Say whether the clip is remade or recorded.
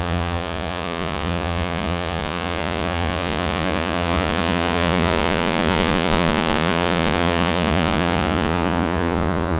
remade